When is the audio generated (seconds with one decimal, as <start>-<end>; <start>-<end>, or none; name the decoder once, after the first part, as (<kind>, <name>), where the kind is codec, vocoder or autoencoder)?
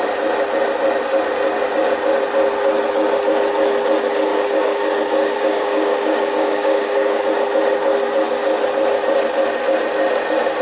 4.3-7.3 (codec, DAC)